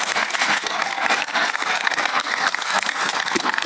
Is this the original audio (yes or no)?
no